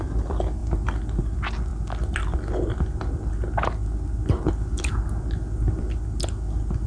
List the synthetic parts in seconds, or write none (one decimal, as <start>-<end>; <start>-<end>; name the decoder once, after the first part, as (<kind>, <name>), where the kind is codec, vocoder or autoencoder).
none